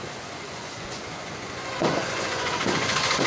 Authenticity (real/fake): fake